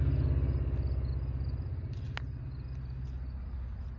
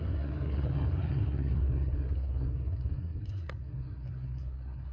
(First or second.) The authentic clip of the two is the first